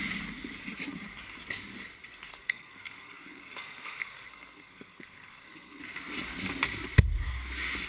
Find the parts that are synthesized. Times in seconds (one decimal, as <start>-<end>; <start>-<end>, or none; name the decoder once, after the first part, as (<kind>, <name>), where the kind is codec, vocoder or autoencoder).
2.3-5.8 (codec, SNAC)